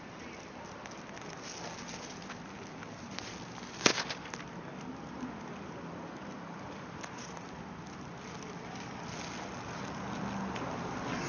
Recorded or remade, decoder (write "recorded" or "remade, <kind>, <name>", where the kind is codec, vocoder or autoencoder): recorded